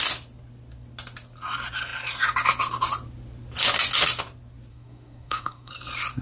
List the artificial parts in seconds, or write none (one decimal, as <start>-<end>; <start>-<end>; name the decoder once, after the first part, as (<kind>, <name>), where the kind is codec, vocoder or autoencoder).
4.7-5.7 (codec, SNAC)